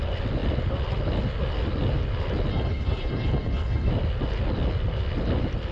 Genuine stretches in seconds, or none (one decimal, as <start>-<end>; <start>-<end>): 0.0-2.5; 3.9-5.7